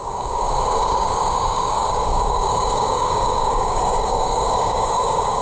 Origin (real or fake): fake